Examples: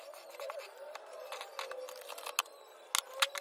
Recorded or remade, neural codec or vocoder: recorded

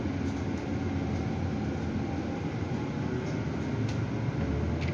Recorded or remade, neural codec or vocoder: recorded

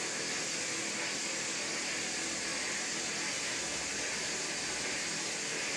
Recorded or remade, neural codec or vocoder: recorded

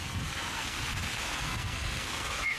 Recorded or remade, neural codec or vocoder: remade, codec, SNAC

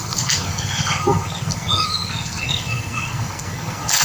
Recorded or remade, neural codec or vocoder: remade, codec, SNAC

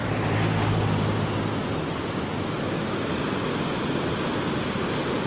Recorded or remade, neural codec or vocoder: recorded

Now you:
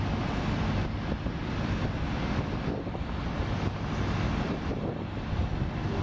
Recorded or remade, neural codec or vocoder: recorded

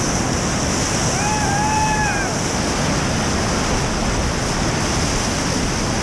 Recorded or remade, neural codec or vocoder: recorded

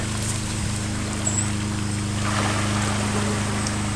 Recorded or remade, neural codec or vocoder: recorded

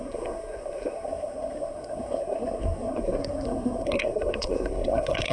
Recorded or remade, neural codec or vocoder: remade, codec, SNAC